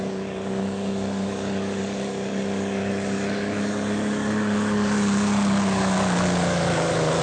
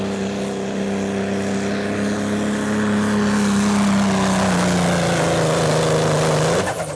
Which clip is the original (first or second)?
second